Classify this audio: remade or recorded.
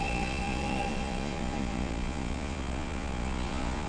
remade